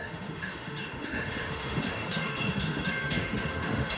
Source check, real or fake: fake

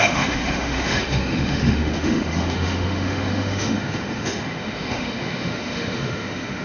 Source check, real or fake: fake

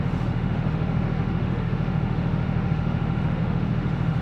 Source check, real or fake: fake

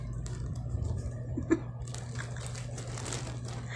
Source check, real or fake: real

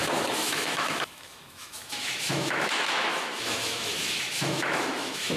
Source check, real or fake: fake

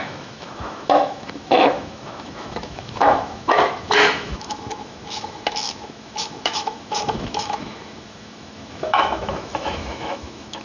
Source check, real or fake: fake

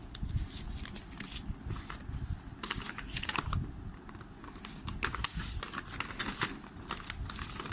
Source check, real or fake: real